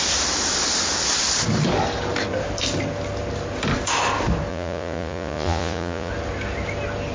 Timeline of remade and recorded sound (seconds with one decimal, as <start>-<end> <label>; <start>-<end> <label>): 0.0-4.5 recorded; 4.5-6.1 remade; 6.1-7.1 recorded